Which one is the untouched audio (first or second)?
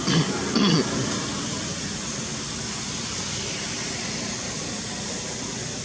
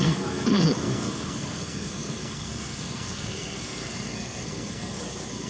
first